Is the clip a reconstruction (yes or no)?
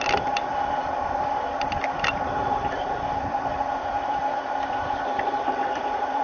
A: yes